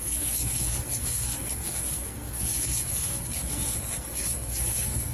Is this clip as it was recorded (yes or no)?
no